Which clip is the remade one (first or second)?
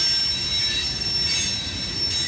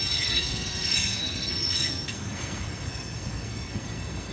second